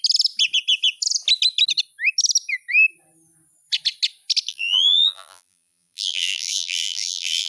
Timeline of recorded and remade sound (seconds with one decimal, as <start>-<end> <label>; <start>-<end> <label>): 0.0-4.5 recorded; 4.5-7.5 remade